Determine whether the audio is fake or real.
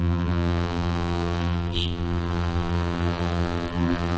fake